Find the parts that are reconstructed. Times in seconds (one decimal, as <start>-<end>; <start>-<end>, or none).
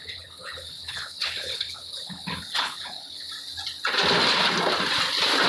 0.0-3.3